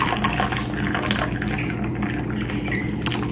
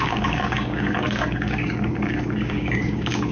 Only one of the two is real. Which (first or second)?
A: first